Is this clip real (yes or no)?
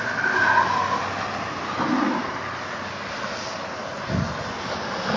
yes